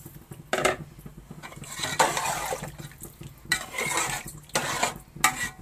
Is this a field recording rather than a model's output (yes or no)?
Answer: yes